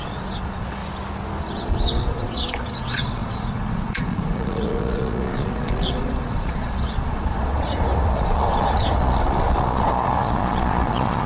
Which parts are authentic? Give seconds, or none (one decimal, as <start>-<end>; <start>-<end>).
0.8-1.4